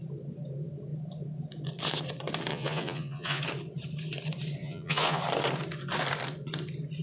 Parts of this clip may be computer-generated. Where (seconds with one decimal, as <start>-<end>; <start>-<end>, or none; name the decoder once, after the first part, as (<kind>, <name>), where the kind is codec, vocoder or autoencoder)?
2.5-3.4 (vocoder, Vocos); 4.6-5.2